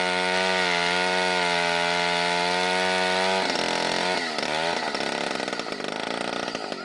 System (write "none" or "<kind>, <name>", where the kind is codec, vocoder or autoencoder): none